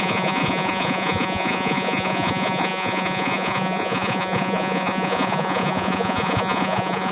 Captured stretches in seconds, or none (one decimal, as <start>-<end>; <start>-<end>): none